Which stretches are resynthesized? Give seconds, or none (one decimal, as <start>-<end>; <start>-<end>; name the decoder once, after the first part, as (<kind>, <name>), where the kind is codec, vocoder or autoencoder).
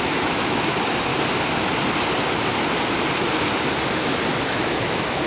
0.0-1.1 (autoencoder, DAC-VAE); 4.3-5.3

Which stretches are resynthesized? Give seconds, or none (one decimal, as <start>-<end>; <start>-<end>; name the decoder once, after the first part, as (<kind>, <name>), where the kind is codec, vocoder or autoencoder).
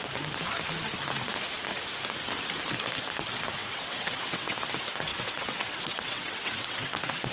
3.6-4.6 (vocoder, WaveNeXt); 5.1-7.3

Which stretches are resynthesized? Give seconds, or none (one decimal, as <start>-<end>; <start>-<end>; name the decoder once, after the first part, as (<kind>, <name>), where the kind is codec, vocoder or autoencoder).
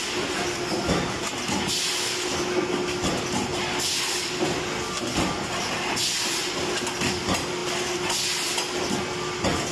none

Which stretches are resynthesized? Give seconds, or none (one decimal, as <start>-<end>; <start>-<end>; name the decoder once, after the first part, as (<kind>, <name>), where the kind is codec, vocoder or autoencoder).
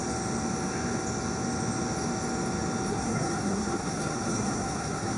2.9-5.2 (codec, SNAC)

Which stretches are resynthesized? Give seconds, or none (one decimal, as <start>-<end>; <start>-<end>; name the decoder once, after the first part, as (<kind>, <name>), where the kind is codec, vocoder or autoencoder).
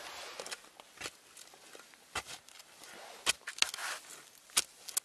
none